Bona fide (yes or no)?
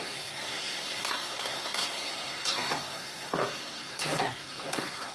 no